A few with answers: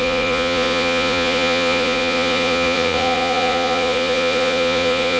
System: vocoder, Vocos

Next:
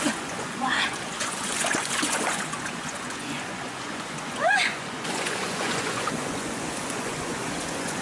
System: vocoder, Vocos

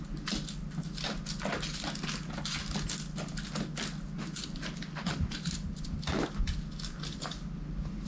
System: none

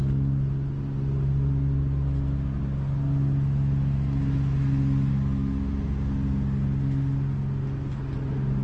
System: none